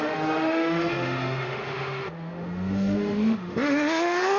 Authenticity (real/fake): fake